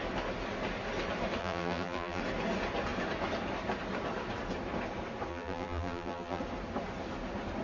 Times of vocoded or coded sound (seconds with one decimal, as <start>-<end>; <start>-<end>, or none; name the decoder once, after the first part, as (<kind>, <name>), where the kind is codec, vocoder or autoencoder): 1.4-2.2 (vocoder, BigVGAN v2); 5.3-6.4